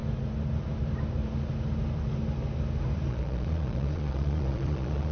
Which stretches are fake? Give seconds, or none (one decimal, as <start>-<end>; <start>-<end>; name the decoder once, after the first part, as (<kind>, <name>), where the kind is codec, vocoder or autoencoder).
3.1-5.1 (vocoder, Vocos)